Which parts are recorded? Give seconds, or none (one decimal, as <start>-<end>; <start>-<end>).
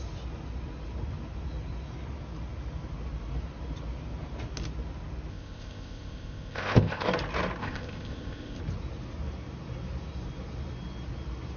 0.0-5.3; 7.1-7.6; 8.6-11.6